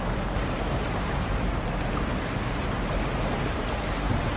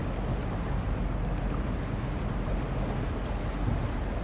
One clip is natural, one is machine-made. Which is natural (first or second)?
second